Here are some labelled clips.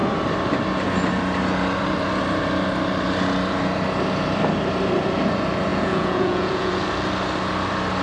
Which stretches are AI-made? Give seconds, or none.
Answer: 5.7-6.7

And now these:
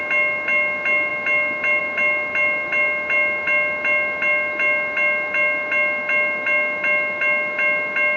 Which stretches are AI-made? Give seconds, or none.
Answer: none

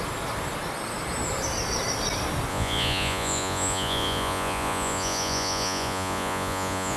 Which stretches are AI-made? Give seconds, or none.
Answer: 2.5-7.0